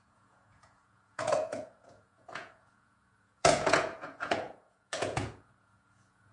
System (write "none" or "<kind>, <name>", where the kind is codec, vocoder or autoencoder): vocoder, Vocos